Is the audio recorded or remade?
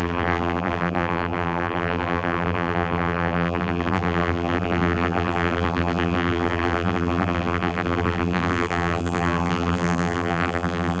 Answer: remade